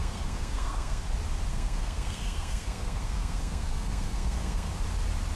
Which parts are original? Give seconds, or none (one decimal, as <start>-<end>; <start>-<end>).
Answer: 1.0-1.5; 4.7-5.4